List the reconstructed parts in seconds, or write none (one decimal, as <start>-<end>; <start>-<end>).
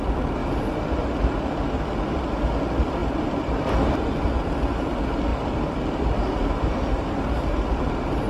3.0-3.9